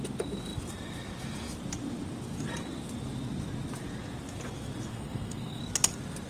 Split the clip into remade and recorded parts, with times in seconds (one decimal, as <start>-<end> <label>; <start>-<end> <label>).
0.0-4.9 recorded; 4.9-5.6 remade; 5.6-6.3 recorded